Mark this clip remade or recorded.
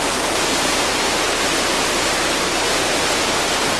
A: recorded